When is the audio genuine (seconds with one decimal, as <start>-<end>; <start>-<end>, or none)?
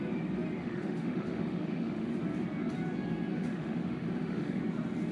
0.0-0.6; 2.1-3.3; 4.6-5.1